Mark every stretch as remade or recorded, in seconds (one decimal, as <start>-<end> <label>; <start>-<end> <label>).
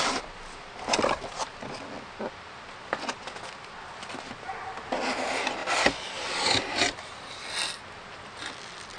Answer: 0.0-9.0 recorded